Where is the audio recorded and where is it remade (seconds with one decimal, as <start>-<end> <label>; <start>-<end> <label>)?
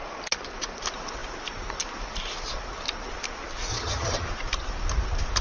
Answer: 0.0-3.7 recorded; 3.7-4.3 remade; 4.3-5.4 recorded